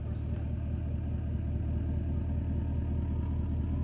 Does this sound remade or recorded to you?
recorded